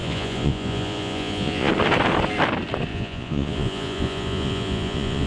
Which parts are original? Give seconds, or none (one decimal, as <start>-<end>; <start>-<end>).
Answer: 1.7-2.9